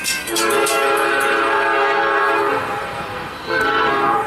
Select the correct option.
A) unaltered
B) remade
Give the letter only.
B